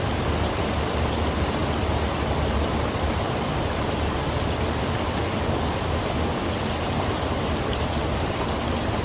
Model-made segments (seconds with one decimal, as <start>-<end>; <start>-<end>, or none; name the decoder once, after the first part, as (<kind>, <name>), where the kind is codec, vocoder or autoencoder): 0.0-9.0 (vocoder, BigVGAN v2)